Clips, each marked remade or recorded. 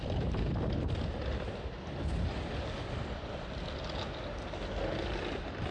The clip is recorded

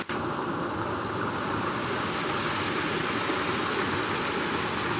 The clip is recorded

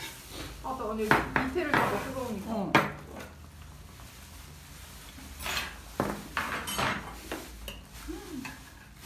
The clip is recorded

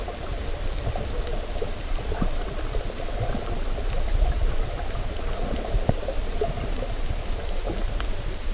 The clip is recorded